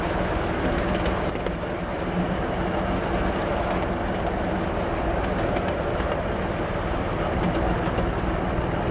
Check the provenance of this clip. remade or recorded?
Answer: recorded